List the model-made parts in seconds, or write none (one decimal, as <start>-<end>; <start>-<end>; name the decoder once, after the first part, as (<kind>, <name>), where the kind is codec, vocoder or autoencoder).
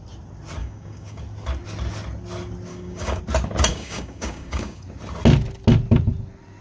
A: 0.6-1.2 (codec, DAC); 2.7-3.2; 3.7-4.8